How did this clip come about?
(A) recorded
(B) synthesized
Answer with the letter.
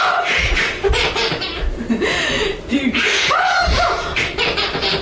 B